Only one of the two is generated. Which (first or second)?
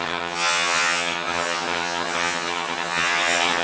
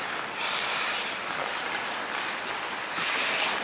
first